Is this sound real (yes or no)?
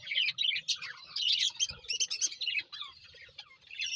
yes